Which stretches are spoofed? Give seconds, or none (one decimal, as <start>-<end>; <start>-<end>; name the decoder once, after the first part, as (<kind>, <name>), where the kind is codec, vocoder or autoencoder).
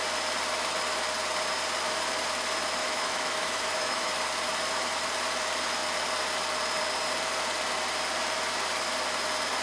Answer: 2.8-4.1 (autoencoder, DAC-VAE)